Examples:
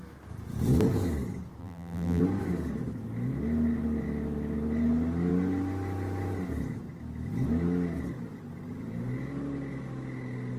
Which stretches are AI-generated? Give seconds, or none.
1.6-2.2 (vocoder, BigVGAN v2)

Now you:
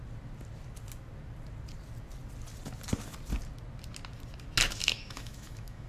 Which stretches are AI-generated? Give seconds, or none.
4.8-5.9 (autoencoder, DAC-VAE)

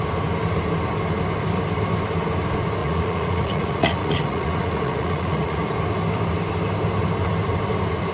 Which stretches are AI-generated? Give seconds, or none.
2.8-5.6 (vocoder, Vocos)

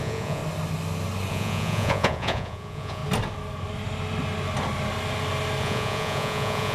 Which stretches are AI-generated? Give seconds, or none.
0.0-0.4 (vocoder, Vocos); 1.3-3.0; 5.6-6.7

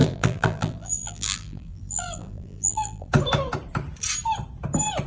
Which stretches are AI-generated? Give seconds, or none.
0.0-3.1 (vocoder, BigVGAN v2)